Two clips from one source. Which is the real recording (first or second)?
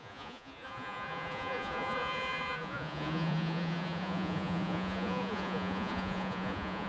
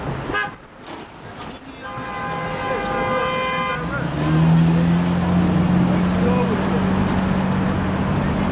second